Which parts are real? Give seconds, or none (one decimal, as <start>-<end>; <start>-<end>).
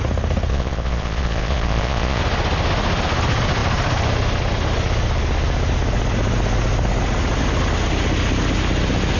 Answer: 0.0-0.5; 2.2-9.2